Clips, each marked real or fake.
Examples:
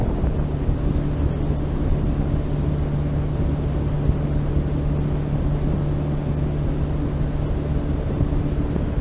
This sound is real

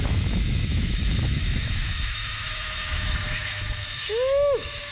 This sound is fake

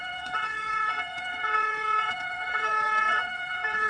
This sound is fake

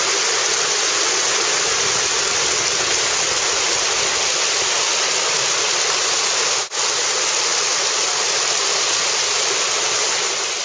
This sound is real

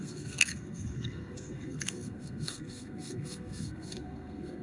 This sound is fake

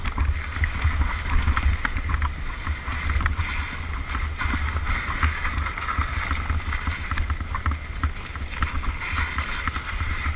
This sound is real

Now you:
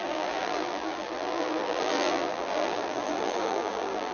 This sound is fake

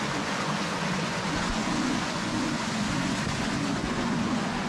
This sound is fake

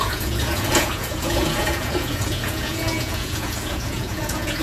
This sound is fake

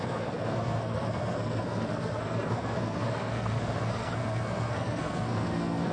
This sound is fake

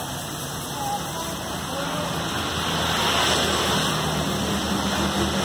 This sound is real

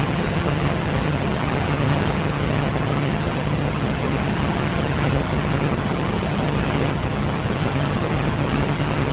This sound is fake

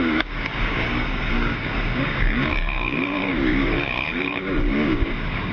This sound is fake